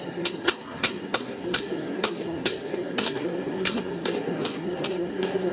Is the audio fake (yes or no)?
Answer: yes